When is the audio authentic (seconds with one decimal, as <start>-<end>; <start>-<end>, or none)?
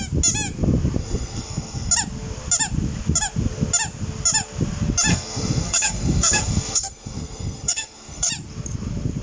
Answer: 0.0-1.0; 1.9-5.1; 8.3-9.2